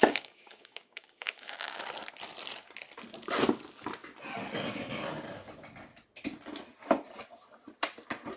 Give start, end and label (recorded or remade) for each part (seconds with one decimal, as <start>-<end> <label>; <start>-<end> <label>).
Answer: 0.0-1.8 remade; 1.8-8.4 recorded